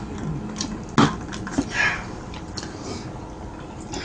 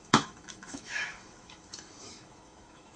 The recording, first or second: first